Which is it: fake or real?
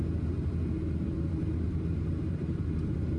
fake